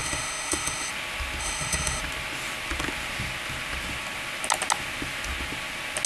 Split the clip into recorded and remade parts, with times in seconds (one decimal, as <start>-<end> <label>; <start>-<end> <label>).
0.0-0.9 remade; 0.9-1.4 recorded; 1.4-2.0 remade; 2.0-6.1 recorded